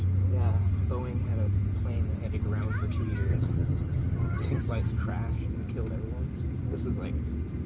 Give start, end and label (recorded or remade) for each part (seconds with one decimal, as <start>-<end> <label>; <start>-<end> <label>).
0.0-3.3 recorded; 3.3-4.6 remade; 4.6-7.7 recorded